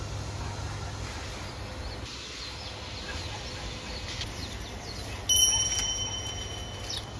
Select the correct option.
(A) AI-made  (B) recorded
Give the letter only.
B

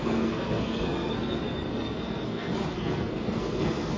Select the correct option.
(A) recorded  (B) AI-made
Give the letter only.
B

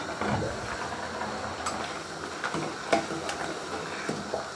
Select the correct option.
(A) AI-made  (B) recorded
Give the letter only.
B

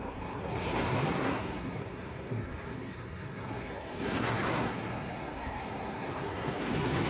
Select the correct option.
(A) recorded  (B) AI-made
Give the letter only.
B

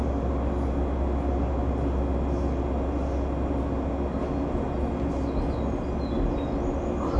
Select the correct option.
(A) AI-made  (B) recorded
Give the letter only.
B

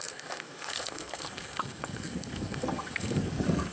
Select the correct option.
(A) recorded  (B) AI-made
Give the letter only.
B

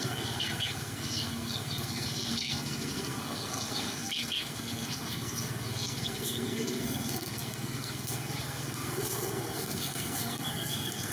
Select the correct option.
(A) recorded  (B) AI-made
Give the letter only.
B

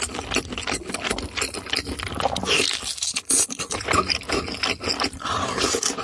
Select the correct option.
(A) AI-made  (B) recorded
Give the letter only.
B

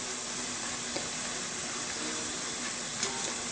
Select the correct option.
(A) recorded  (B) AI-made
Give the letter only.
A